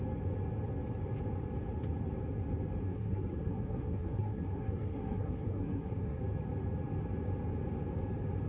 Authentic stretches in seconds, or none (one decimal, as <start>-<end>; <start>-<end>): 0.0-2.8; 6.2-8.5